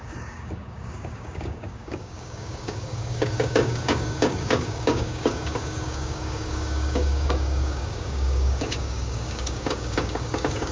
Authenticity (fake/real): fake